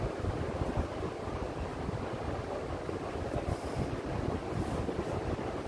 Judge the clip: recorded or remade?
recorded